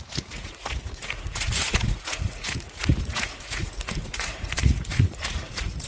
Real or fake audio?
fake